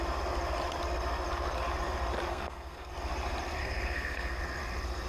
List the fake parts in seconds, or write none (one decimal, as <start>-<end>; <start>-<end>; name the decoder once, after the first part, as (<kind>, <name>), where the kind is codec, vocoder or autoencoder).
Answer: 2.3-2.9 (codec, SNAC); 3.6-4.4

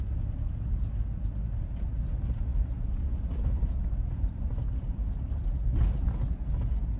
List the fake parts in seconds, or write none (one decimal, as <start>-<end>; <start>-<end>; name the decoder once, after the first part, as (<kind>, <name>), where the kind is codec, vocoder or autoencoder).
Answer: 2.5-4.7 (vocoder, BigVGAN v2)